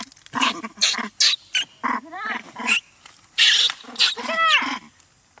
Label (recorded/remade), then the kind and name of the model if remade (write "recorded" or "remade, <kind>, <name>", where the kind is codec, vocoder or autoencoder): recorded